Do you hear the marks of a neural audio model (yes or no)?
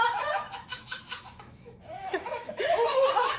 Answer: yes